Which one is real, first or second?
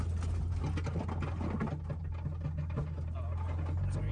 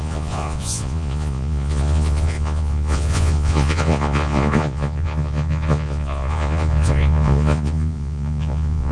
first